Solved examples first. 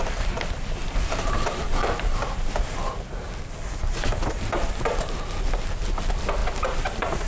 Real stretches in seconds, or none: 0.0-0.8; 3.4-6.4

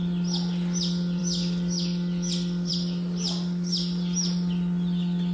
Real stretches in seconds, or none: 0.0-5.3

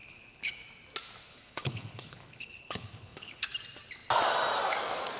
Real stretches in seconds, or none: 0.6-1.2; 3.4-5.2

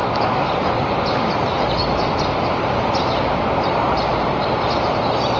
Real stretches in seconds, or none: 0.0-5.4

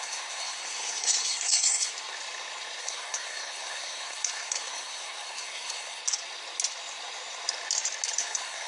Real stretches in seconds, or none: 1.9-2.8; 6.0-8.2

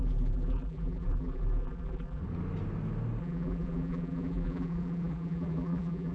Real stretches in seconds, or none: 2.2-3.2

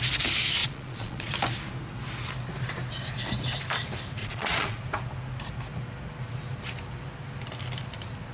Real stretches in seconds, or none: 0.0-0.6; 1.3-4.2; 4.8-8.3

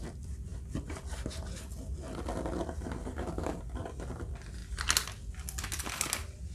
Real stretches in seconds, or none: 0.0-3.0; 3.6-6.5